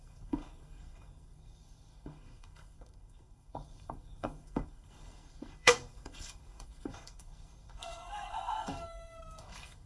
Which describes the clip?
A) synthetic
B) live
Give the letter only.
A